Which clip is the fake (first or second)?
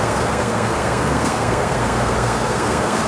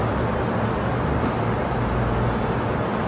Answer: first